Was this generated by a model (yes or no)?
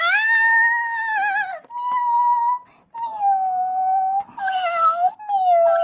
no